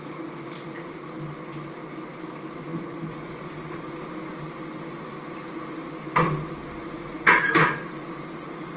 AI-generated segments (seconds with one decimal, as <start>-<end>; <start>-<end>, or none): 0.0-0.9; 2.7-3.8; 6.8-7.5